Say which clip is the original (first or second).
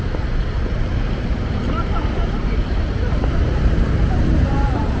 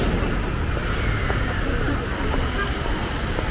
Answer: second